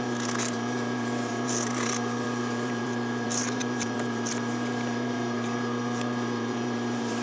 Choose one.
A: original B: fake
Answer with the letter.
B